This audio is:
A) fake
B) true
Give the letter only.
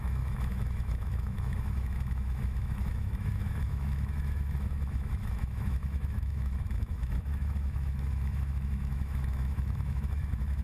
A